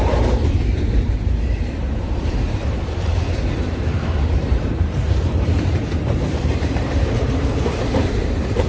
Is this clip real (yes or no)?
no